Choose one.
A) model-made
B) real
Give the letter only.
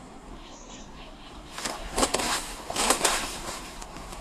A